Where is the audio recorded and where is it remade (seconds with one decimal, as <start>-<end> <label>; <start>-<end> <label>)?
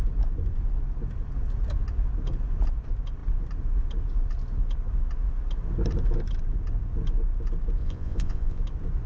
0.0-7.8 recorded; 7.8-8.6 remade; 8.6-9.1 recorded